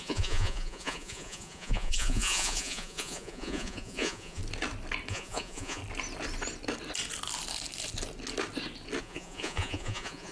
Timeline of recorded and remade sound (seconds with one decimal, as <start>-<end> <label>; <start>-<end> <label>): 0.0-4.4 remade; 4.4-5.1 recorded; 5.1-5.8 remade; 5.8-9.0 recorded; 9.0-10.3 remade